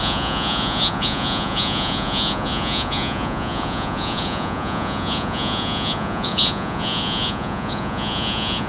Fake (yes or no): yes